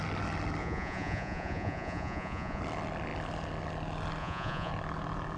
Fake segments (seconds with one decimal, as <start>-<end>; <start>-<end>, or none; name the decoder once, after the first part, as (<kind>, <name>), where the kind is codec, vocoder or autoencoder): 0.6-2.6 (vocoder, Vocos); 4.2-4.7